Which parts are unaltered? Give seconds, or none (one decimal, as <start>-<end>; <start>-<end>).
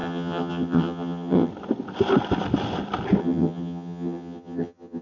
1.5-3.2